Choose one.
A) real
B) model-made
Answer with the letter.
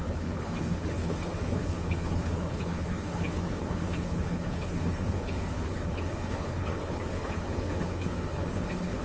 B